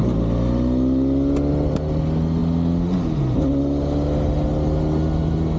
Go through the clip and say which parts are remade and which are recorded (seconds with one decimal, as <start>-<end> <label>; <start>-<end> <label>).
0.0-5.6 recorded